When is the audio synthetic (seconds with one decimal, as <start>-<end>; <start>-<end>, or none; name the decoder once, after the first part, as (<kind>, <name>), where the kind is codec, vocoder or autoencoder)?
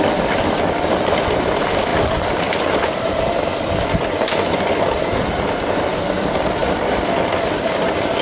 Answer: none